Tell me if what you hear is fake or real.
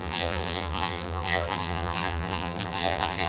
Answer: fake